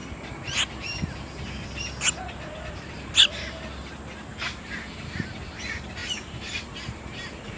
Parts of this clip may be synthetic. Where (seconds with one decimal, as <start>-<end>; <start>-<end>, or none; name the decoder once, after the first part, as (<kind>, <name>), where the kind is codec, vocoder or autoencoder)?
4.3-5.3 (vocoder, BigVGAN v2); 6.0-7.6